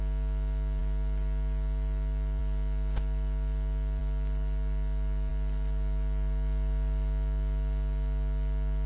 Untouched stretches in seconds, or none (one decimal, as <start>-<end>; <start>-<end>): 0.0-8.9